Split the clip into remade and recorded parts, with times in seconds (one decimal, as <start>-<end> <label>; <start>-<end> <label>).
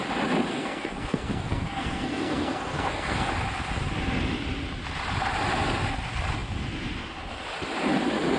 0.0-0.5 recorded; 0.5-3.3 remade; 3.3-8.4 recorded